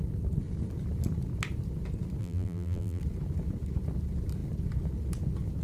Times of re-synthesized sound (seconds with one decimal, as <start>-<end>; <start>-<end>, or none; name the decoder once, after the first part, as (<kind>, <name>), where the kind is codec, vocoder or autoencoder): 2.2-3.0 (vocoder, BigVGAN v2)